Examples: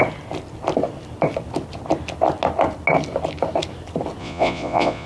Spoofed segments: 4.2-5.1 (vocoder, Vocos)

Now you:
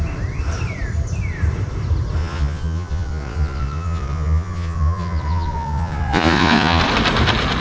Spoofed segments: 2.2-6.8 (vocoder, Vocos)

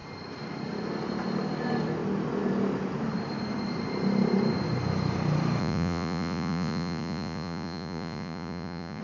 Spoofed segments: 5.6-9.0 (vocoder, Vocos)

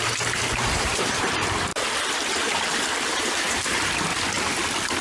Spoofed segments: 0.0-1.7 (vocoder, BigVGAN v2); 3.1-4.1